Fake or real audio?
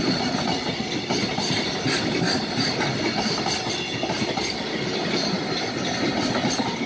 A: real